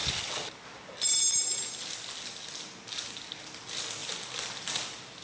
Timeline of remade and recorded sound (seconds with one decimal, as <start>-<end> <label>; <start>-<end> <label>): 0.0-5.2 recorded